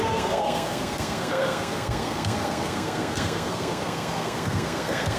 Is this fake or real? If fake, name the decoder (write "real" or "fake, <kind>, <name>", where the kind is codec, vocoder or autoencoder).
fake, codec, SNAC